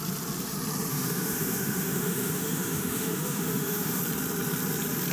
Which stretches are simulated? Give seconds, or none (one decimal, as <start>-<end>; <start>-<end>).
0.9-4.0